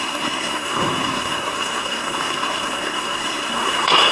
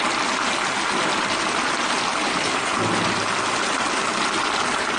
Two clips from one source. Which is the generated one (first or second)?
first